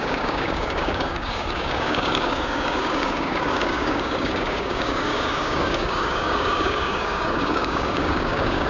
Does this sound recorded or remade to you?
remade